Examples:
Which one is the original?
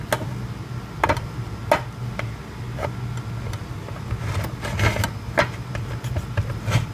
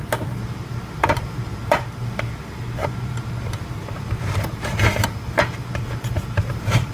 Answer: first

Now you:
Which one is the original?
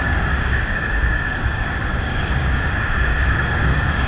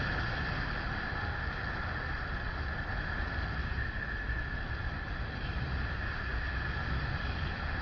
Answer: second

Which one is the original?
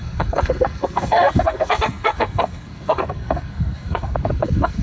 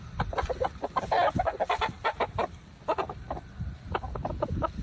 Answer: second